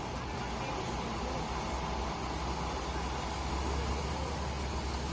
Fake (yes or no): no